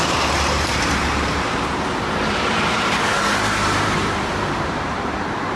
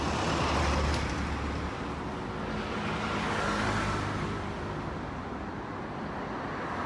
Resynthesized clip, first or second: first